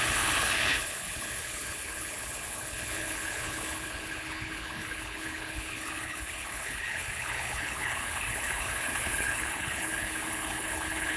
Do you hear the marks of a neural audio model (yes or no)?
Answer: yes